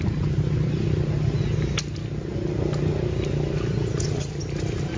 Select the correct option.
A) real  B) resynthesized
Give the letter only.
A